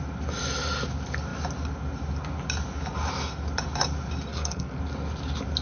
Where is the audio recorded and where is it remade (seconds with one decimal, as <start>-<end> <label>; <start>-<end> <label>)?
0.0-4.3 recorded; 4.3-4.8 remade; 4.8-5.6 recorded